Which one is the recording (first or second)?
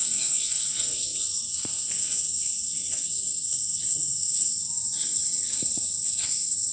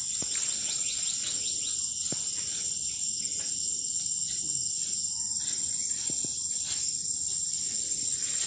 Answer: second